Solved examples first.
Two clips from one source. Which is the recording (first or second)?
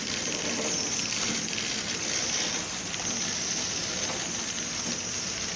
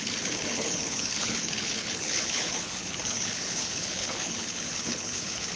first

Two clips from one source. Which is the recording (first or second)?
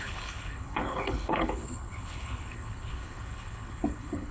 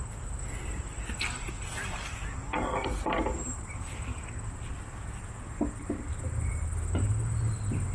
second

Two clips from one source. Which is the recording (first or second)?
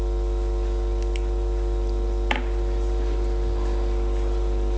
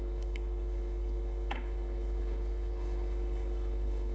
first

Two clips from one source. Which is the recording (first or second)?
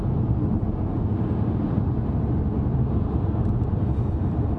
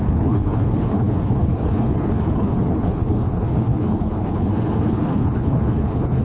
first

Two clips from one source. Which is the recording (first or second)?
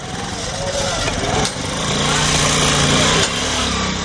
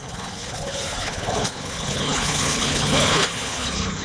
first